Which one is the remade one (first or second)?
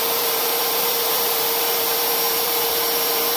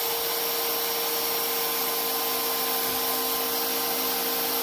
first